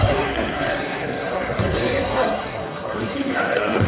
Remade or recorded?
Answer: remade